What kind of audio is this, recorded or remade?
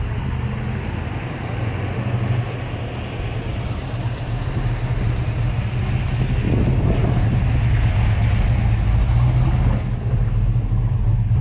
recorded